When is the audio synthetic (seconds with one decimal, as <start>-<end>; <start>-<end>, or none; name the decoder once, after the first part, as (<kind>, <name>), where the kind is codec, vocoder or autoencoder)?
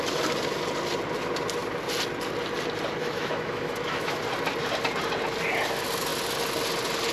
3.0-4.2 (autoencoder, DAC-VAE)